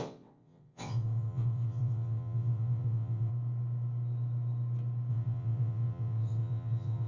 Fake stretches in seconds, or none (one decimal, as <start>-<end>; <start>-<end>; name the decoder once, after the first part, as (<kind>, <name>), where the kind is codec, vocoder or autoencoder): 0.0-3.3 (vocoder, WaveNeXt); 5.1-7.1